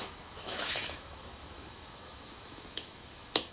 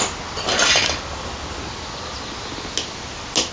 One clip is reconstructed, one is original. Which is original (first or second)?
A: second